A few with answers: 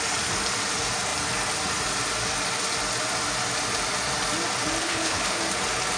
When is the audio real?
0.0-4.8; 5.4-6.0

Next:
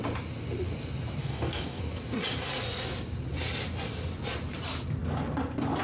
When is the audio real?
0.0-1.2; 1.8-5.8

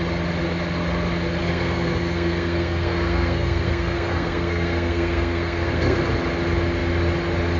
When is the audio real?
0.0-1.4; 6.0-7.6

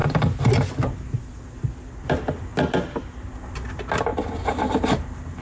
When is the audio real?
0.0-5.4

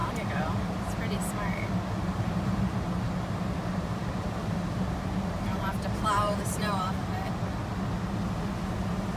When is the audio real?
1.0-2.0; 7.0-9.2

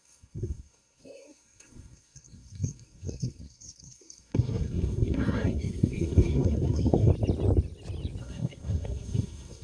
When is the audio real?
7.1-8.2